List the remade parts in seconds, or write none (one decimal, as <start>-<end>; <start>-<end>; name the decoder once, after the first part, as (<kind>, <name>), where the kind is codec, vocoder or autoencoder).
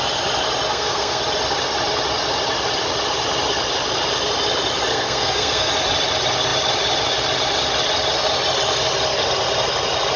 0.7-1.2 (codec, SNAC); 4.9-5.7